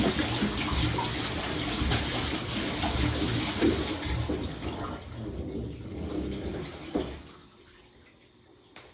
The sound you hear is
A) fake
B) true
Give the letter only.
B